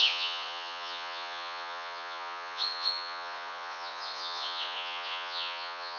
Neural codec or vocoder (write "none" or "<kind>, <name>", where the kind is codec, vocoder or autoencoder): vocoder, Vocos